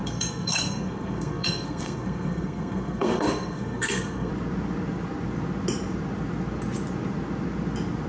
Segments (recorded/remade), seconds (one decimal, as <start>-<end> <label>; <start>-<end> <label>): 0.0-4.3 remade; 4.3-8.1 recorded